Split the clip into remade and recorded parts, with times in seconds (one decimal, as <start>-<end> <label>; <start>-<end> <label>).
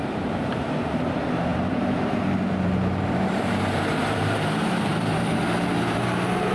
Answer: 0.0-6.5 remade